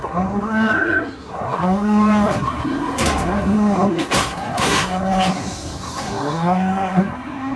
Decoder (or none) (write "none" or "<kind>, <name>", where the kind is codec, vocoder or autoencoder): codec, SNAC